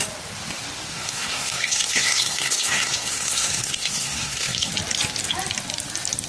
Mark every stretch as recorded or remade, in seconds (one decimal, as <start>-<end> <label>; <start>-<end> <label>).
0.0-0.9 recorded; 0.9-4.7 remade; 4.7-6.3 recorded